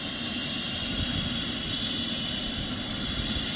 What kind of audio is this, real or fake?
real